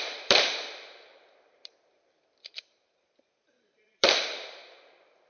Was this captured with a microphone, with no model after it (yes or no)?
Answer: no